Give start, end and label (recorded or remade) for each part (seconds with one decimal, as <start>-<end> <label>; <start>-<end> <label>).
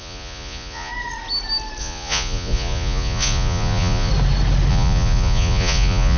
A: 0.0-0.9 remade; 0.9-1.8 recorded; 1.8-4.1 remade; 4.1-4.7 recorded; 4.7-6.2 remade